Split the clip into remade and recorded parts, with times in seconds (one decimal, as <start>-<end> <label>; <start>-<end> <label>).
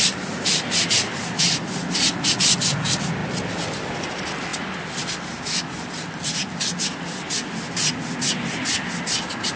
0.0-9.6 recorded